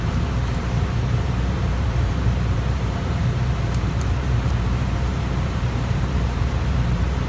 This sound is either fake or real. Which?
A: fake